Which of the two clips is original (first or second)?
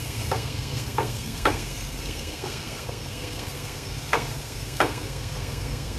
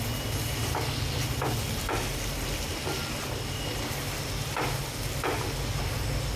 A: second